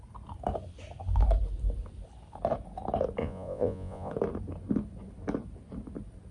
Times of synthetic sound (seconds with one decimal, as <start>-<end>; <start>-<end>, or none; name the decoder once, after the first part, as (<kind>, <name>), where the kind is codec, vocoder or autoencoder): 3.2-4.1 (vocoder, Vocos)